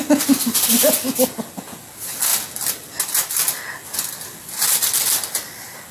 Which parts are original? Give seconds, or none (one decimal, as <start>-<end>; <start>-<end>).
0.0-5.9